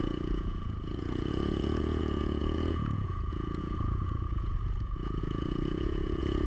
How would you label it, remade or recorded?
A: remade